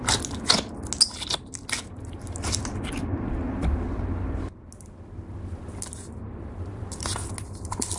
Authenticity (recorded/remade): recorded